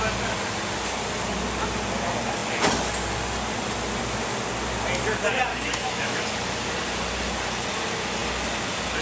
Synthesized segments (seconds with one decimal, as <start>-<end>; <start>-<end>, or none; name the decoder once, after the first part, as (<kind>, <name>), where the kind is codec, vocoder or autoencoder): 5.5-6.2 (autoencoder, DAC-VAE)